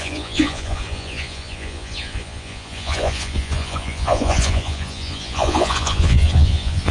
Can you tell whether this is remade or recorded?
remade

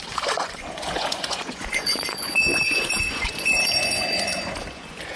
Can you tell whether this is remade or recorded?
remade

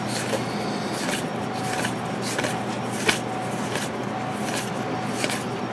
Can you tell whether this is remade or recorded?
recorded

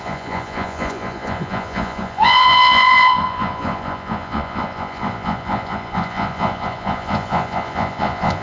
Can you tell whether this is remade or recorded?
remade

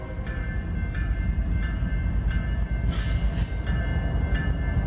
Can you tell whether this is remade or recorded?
recorded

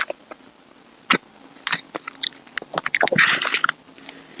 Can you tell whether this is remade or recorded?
recorded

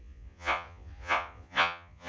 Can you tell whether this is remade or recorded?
remade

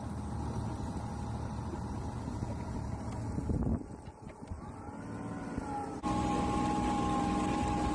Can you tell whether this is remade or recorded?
recorded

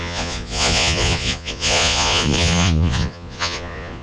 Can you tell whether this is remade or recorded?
remade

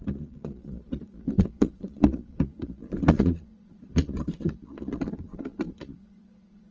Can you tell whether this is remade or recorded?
remade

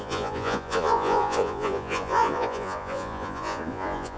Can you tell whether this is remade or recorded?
remade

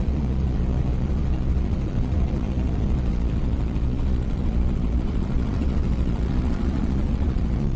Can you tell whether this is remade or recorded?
remade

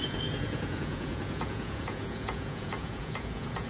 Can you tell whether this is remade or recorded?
remade